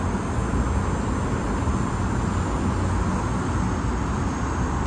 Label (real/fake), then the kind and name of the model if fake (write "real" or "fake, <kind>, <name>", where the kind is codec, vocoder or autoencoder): real